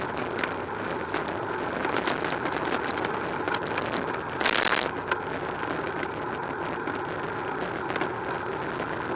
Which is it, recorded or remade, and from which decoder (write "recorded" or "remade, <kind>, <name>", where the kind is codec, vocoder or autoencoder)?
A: recorded